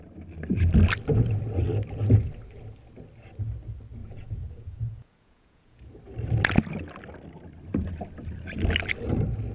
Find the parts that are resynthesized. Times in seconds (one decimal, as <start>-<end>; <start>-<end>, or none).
4.0-5.9